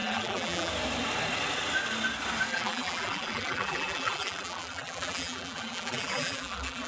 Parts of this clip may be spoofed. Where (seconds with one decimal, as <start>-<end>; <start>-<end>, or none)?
0.0-0.7; 2.5-6.9